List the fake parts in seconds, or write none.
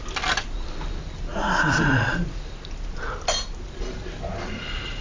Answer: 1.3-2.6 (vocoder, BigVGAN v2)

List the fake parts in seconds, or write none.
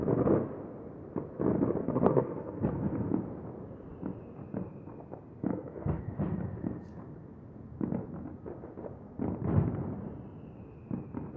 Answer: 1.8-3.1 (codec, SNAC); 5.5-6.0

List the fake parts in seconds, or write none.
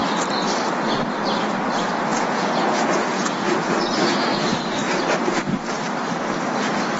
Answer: 2.1-3.7 (vocoder, Vocos)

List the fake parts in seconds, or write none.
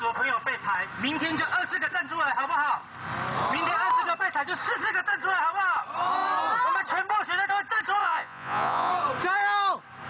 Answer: 8.0-8.9 (vocoder, Vocos)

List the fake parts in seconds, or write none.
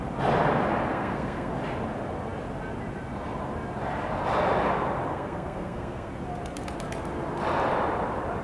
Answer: 0.9-1.5 (codec, SNAC); 5.1-6.1